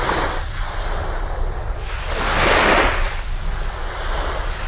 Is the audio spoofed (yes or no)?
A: no